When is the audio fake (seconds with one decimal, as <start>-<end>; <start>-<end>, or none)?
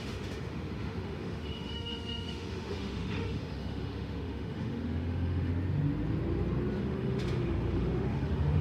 0.0-5.5; 6.8-8.6